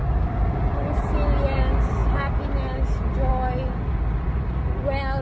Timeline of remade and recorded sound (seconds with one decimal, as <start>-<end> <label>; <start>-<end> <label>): 0.0-5.2 recorded